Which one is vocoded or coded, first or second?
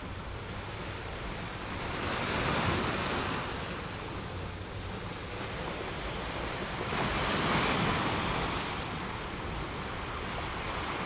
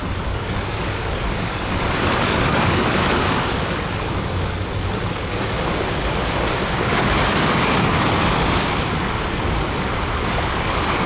second